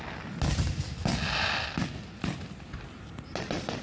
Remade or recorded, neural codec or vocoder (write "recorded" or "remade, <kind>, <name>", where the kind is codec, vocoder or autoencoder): recorded